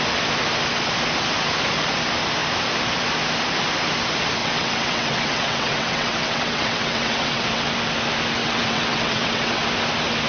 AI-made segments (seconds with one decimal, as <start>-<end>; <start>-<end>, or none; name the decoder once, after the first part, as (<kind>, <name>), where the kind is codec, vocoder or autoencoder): 4.4-7.7 (vocoder, WaveNeXt); 8.4-9.6